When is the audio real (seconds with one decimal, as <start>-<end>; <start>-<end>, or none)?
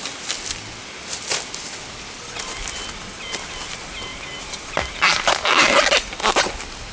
0.0-6.9